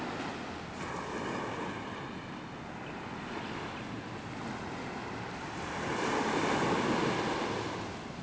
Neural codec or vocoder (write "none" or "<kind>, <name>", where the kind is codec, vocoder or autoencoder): none